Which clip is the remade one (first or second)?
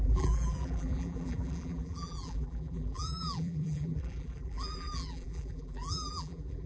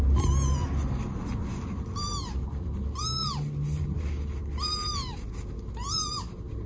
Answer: first